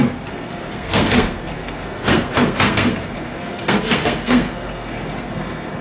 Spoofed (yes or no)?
yes